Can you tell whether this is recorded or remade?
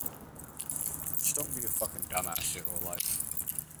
remade